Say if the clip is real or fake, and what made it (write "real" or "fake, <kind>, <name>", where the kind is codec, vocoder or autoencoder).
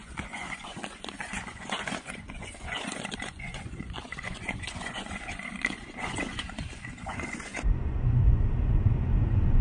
fake, vocoder, Vocos